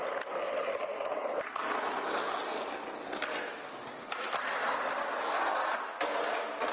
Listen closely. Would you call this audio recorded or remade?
recorded